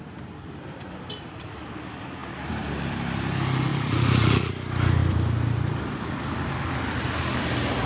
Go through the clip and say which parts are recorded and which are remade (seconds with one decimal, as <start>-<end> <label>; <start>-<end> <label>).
0.0-3.7 recorded; 3.7-4.5 remade; 4.5-7.9 recorded